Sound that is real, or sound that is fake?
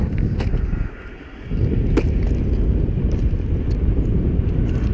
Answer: real